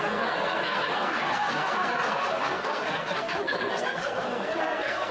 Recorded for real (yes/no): no